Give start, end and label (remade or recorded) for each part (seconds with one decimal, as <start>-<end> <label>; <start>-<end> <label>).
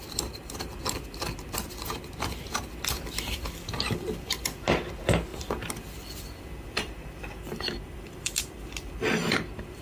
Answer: 0.0-5.3 recorded; 5.3-9.8 remade